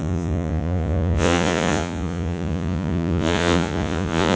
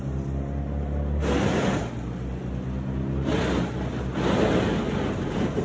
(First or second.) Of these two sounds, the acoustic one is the second